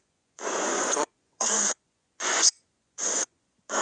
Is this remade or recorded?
remade